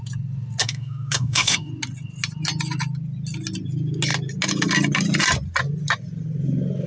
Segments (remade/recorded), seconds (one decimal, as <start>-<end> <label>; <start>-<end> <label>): 0.0-0.6 recorded; 0.6-1.7 remade; 1.7-6.9 recorded

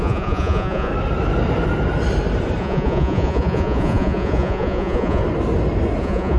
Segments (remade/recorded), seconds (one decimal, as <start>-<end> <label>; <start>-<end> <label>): 0.0-0.9 remade; 0.9-2.6 recorded; 2.6-5.2 remade; 5.2-6.0 recorded; 6.0-6.4 remade

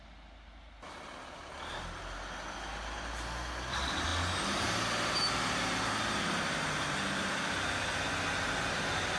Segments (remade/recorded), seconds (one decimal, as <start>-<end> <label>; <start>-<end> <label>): 0.0-9.2 recorded